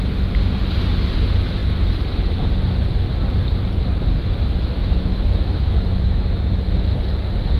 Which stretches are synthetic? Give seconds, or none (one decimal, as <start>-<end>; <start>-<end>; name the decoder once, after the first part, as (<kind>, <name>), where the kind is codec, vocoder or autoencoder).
4.8-6.7 (autoencoder, DAC-VAE)